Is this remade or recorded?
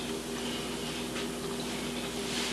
recorded